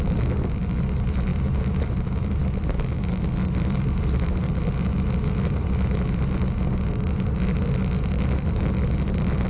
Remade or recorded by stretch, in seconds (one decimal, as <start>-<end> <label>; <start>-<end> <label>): 0.0-9.5 recorded